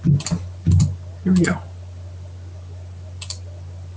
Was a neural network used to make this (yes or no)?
yes